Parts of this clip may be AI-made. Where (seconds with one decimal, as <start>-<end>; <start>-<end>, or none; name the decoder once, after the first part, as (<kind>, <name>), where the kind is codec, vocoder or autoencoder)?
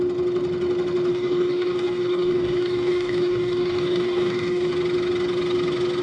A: 1.1-4.7 (codec, DAC)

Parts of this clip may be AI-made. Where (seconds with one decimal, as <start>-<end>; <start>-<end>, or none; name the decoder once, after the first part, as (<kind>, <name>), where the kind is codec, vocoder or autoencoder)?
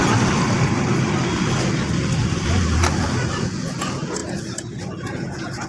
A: 3.4-4.2 (vocoder, Vocos); 5.0-5.7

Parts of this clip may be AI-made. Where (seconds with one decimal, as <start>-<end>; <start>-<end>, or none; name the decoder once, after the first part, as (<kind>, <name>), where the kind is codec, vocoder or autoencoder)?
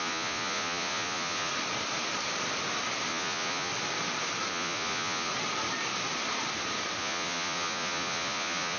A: 0.0-1.5 (vocoder, Vocos); 3.1-3.7; 4.5-5.3; 7.0-8.8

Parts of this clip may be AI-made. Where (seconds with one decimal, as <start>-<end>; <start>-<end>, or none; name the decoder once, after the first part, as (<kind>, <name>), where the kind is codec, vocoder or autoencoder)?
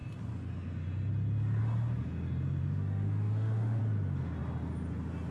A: 2.6-3.8 (autoencoder, DAC-VAE)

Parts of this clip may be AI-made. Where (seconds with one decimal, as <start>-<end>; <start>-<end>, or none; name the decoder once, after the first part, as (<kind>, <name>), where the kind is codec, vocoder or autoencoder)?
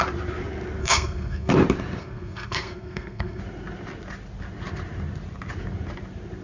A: 0.8-1.5 (codec, SNAC); 2.0-3.4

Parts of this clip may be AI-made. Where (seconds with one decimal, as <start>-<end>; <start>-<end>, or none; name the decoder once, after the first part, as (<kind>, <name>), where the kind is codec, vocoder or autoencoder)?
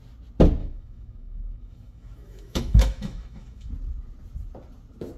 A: 0.6-3.7 (autoencoder, DAC-VAE)